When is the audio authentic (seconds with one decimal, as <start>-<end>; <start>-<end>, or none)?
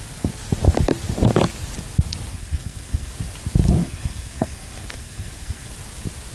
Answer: 0.0-2.3; 3.1-3.8; 5.7-6.3